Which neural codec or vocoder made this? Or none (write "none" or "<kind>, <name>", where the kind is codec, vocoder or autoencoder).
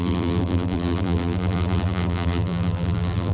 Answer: vocoder, BigVGAN v2